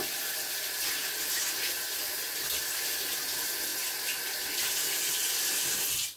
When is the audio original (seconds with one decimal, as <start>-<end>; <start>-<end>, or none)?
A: 0.0-3.7; 4.4-6.2